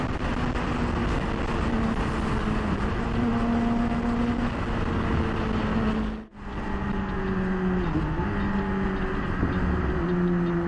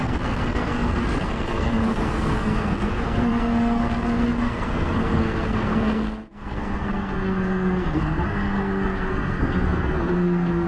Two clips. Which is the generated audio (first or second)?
second